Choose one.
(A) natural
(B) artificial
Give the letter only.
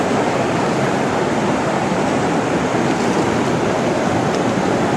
B